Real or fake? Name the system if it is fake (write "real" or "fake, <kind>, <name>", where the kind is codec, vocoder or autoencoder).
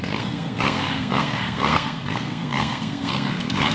fake, codec, SNAC